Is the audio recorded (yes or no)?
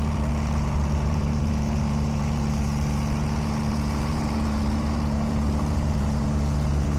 no